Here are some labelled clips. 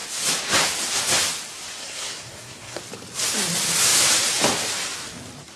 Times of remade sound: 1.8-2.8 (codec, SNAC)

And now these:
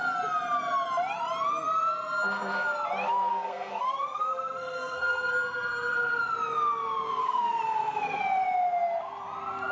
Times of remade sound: 3.3-5.3 (codec, SNAC); 7.2-8.2

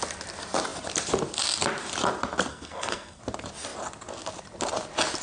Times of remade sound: 2.5-3.2 (codec, SNAC)

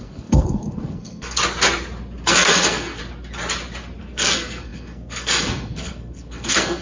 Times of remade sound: 0.0-1.4 (codec, SNAC); 2.3-3.0; 4.0-6.8

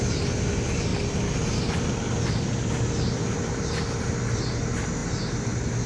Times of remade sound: none

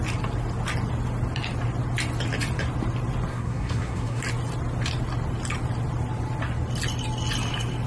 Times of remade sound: 3.3-4.2 (codec, SNAC)

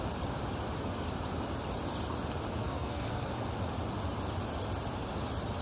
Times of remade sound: 2.6-3.3 (codec, SNAC)